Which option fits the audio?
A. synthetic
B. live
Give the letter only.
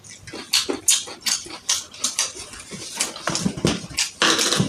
B